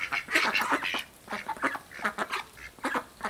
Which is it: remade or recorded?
recorded